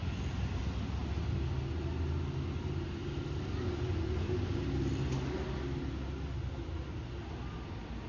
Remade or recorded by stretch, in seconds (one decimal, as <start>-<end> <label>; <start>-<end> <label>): 0.0-8.1 recorded